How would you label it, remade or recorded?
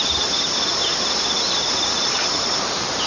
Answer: remade